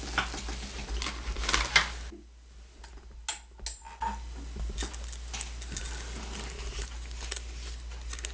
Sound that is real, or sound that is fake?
real